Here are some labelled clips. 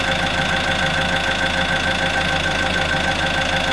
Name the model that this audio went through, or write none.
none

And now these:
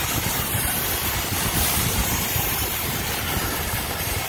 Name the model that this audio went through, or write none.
vocoder, BigVGAN v2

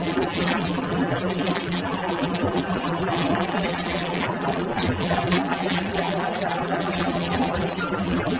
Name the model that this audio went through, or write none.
vocoder, BigVGAN v2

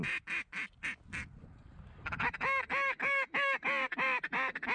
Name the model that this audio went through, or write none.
none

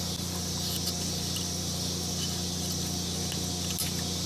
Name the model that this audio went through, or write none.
none